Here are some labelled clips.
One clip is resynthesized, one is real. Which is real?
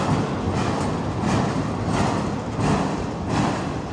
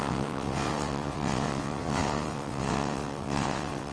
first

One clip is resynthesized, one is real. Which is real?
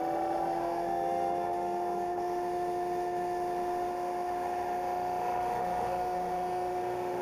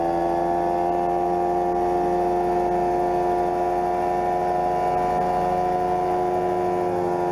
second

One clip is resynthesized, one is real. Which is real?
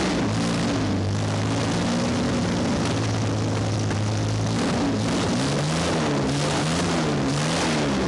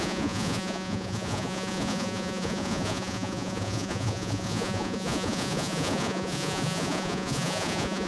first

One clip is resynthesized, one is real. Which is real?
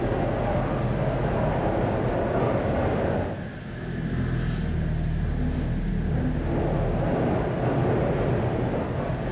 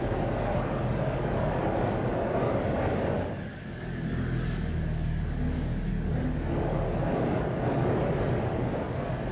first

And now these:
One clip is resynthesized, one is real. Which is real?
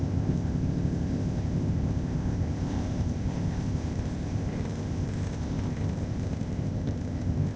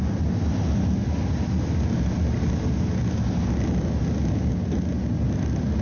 second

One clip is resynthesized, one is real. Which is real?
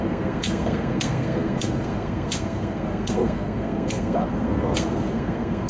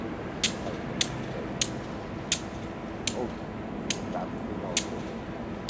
second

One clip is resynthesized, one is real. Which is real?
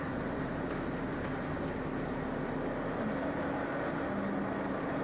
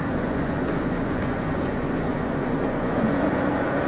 first